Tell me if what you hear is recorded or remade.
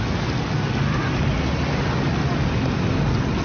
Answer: recorded